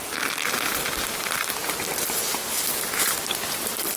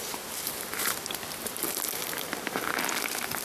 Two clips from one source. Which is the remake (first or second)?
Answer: second